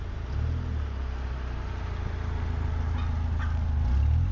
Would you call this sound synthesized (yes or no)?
no